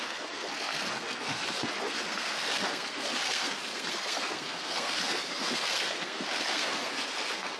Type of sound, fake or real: fake